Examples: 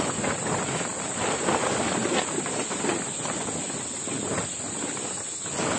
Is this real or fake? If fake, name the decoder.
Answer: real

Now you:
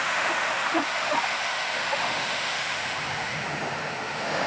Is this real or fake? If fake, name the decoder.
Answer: fake, autoencoder, DAC-VAE